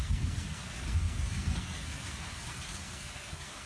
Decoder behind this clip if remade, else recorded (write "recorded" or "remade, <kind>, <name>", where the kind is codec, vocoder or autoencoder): remade, codec, SNAC